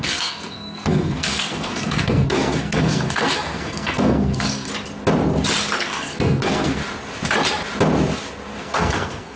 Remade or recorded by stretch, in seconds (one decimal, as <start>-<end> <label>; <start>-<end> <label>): 0.0-4.7 remade; 4.7-5.8 recorded; 5.8-6.8 remade; 6.8-8.6 recorded; 8.6-9.4 remade